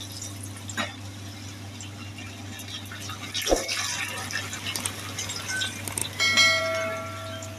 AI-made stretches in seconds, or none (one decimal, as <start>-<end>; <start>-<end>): none